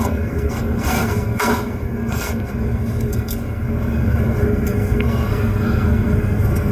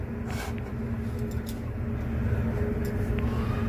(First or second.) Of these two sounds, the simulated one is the first